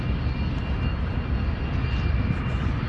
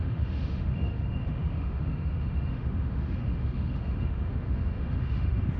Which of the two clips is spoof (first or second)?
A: second